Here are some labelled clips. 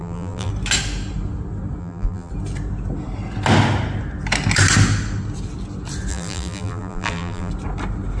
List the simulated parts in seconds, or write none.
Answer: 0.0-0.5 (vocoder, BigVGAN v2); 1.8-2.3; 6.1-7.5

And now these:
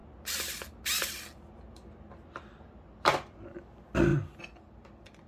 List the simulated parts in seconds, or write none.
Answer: none

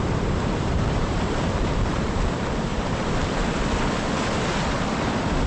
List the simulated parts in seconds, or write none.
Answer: 0.0-2.2 (vocoder, BigVGAN v2); 2.7-3.6